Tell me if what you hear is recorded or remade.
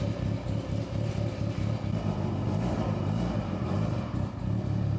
recorded